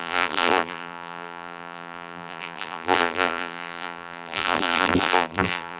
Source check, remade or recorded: remade